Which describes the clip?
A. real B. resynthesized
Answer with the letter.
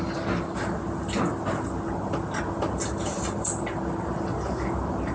A